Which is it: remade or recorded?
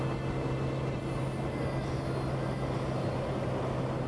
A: recorded